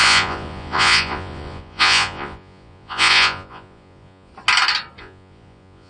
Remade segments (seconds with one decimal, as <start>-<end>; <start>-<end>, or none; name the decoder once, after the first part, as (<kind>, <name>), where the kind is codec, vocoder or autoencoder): 0.0-4.3 (vocoder, Vocos); 5.0-5.9